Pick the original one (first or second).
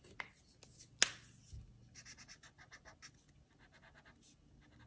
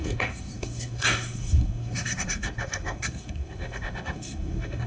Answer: first